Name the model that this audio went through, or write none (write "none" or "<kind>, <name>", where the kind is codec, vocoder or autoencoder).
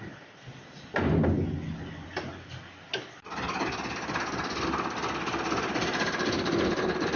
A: none